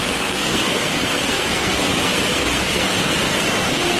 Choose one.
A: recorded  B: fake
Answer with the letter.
B